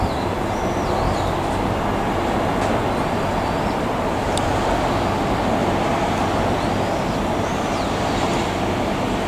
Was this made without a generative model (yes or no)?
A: yes